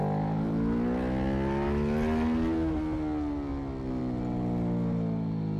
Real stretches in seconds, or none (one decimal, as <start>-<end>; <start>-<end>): 0.0-5.6